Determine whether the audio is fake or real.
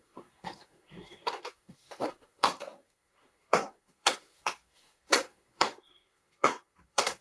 fake